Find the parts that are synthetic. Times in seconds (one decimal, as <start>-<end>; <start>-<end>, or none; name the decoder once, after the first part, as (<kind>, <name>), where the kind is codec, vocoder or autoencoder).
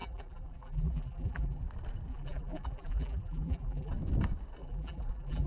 0.0-1.6 (vocoder, BigVGAN v2); 2.1-3.9; 4.6-5.5